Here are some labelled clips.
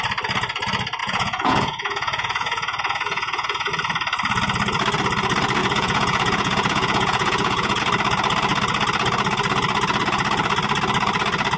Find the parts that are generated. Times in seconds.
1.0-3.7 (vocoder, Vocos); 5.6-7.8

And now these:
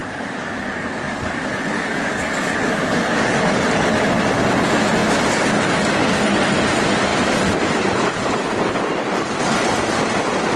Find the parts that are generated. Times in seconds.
0.0-3.7 (codec, DAC)

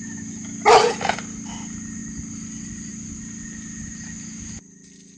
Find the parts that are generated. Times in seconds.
none